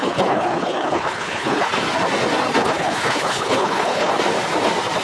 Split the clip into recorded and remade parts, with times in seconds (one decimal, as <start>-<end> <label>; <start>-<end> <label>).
0.0-1.7 remade; 1.7-2.6 recorded; 2.6-4.1 remade; 4.1-5.0 recorded